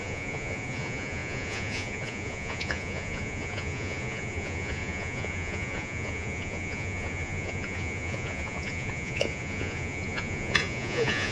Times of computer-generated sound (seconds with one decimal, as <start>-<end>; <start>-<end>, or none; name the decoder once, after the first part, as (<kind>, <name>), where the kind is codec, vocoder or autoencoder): 0.0-11.3 (vocoder, Vocos)